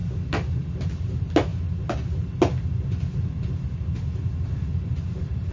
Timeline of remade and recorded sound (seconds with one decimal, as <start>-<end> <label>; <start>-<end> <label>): 0.0-5.5 recorded